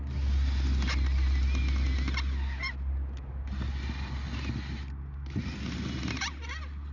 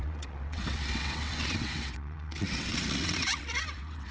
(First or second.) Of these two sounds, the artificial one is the second